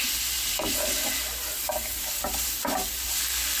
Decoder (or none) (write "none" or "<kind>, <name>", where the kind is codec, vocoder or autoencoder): none